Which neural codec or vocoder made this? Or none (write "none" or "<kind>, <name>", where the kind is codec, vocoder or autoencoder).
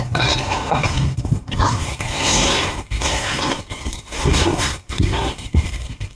codec, SNAC